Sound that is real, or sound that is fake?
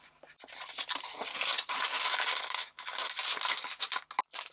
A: real